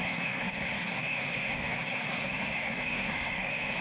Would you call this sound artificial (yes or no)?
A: yes